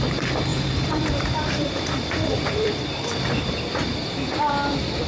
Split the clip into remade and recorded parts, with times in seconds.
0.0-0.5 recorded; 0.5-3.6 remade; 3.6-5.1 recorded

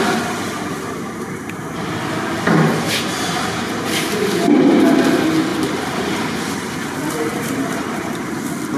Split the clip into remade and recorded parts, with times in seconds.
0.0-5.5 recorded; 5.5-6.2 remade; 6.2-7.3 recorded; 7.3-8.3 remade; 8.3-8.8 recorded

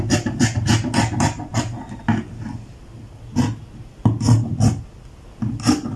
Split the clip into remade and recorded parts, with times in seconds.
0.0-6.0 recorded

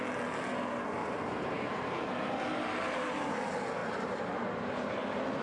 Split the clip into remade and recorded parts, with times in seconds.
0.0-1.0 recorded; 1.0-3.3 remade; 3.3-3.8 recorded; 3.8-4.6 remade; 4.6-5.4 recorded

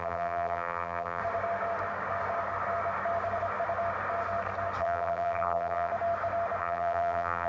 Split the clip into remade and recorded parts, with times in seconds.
0.0-1.2 remade; 1.2-4.8 recorded; 4.8-5.9 remade; 5.9-6.6 recorded; 6.6-7.5 remade

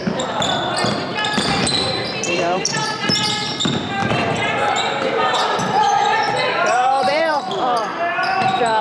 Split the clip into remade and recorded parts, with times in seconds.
0.0-1.1 recorded; 1.1-3.6 remade; 3.6-4.0 recorded; 4.0-8.8 remade

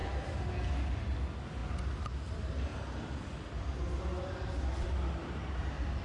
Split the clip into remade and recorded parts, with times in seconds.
0.0-2.7 recorded; 2.7-3.3 remade; 3.3-6.0 recorded

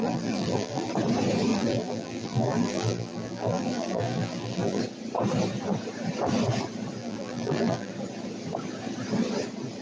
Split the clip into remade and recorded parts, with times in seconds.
0.0-0.9 remade; 0.9-1.5 recorded; 1.5-4.8 remade; 4.8-7.0 recorded; 7.0-7.9 remade; 7.9-9.8 recorded